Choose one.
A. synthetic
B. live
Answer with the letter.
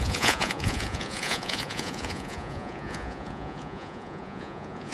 A